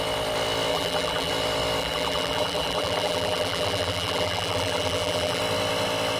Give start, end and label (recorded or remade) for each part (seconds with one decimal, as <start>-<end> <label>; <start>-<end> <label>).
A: 0.0-0.7 recorded; 0.7-1.3 remade; 1.3-1.8 recorded; 1.8-5.4 remade; 5.4-6.2 recorded